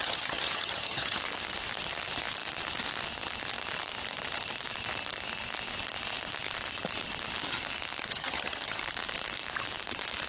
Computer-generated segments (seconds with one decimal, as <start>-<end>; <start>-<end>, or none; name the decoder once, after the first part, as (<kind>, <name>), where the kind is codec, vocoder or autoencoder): 0.0-1.2 (vocoder, HiFi-GAN); 8.1-8.8

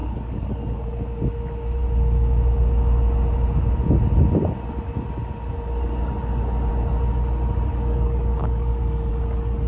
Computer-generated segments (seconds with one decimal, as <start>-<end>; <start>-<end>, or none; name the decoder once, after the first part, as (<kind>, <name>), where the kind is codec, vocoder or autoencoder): 0.0-0.6 (codec, DAC); 7.7-9.1

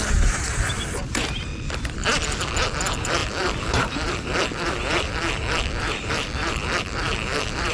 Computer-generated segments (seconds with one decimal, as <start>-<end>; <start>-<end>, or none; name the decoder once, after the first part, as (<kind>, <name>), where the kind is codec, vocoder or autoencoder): 0.0-1.5 (vocoder, BigVGAN v2); 2.8-7.7

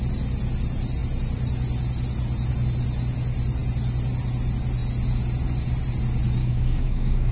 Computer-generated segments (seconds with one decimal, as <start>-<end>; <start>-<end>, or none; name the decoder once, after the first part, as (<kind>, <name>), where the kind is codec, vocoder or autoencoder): 6.4-7.3 (codec, DAC)

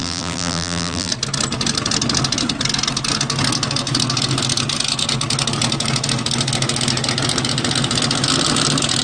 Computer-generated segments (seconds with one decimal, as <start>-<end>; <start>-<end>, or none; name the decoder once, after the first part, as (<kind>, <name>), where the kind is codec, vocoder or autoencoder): 0.0-1.1 (vocoder, BigVGAN v2)

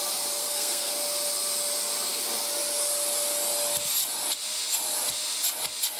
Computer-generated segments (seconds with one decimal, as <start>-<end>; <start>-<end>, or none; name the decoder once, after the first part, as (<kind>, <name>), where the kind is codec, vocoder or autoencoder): 0.4-0.9 (codec, SNAC)